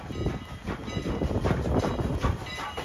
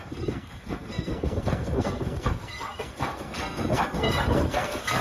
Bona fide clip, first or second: first